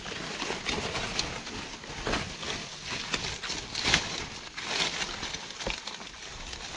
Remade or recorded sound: recorded